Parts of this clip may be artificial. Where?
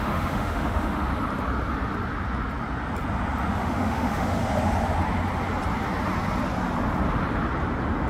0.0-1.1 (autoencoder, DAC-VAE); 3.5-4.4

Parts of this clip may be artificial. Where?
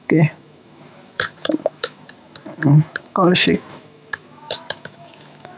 0.0-5.6 (autoencoder, DAC-VAE)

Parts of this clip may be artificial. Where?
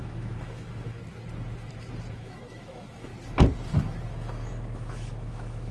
0.0-1.0 (autoencoder, DAC-VAE); 2.1-3.1; 4.1-5.7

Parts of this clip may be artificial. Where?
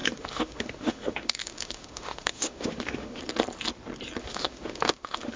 0.0-3.2 (autoencoder, DAC-VAE); 4.2-5.4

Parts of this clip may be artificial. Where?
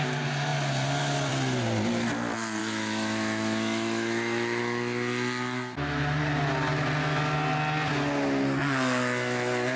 2.6-4.6 (autoencoder, DAC-VAE)